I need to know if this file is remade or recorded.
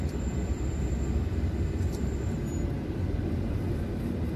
remade